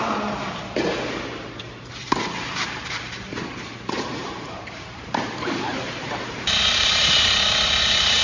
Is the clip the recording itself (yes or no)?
no